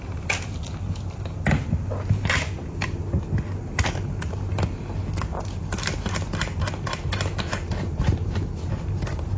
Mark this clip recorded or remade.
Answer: recorded